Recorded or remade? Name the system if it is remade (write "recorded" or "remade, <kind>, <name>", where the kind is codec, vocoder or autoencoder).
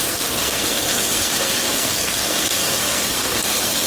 remade, codec, SNAC